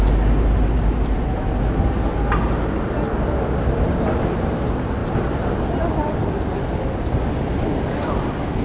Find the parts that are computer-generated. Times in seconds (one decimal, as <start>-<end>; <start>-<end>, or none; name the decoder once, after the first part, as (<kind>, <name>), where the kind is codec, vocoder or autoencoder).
none